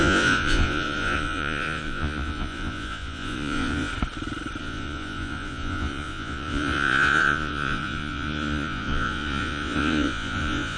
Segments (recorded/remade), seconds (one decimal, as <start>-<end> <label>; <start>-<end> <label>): 0.0-3.9 remade; 3.9-4.6 recorded; 4.6-10.8 remade